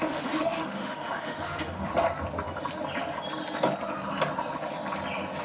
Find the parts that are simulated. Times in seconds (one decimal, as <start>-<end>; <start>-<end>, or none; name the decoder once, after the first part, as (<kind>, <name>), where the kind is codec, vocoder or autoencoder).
0.0-1.9 (autoencoder, DAC-VAE)